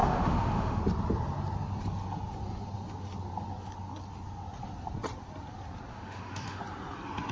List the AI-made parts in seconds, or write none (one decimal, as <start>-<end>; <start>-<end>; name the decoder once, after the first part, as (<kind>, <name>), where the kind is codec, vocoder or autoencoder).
0.0-0.8 (autoencoder, DAC-VAE); 5.9-6.6